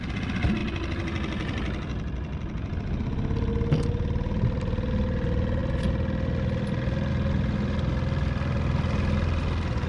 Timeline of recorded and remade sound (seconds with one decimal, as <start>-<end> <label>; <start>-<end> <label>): 0.0-9.9 recorded